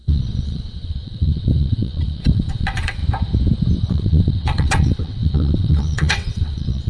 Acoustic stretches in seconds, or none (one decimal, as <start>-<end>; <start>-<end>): 3.0-3.9